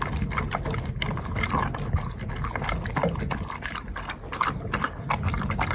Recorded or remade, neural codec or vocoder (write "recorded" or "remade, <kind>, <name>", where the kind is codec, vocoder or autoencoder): recorded